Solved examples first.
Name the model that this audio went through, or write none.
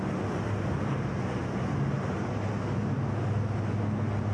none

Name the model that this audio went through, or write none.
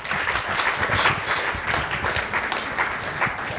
none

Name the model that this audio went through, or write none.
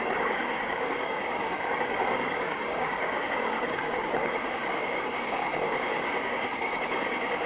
codec, DAC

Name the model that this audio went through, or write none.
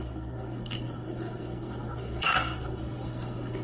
codec, SNAC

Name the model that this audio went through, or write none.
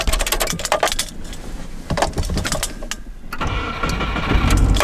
none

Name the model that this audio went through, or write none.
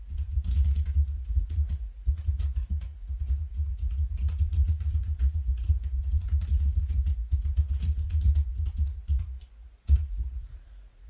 vocoder, Vocos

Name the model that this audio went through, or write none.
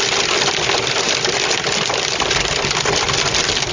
none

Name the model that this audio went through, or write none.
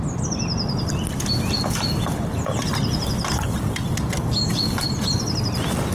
none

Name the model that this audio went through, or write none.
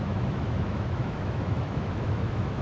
autoencoder, DAC-VAE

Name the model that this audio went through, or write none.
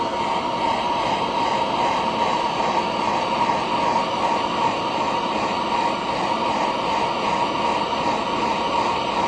none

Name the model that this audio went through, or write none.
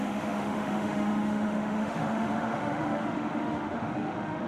autoencoder, DAC-VAE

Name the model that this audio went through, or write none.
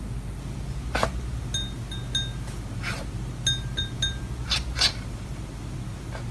none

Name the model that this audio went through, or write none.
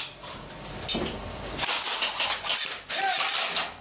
none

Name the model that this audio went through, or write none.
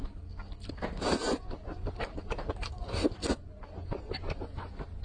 none